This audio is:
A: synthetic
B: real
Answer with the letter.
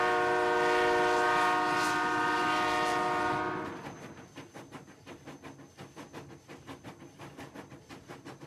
B